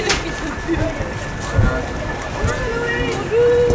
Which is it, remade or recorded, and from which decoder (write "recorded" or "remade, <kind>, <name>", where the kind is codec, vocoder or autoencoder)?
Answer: recorded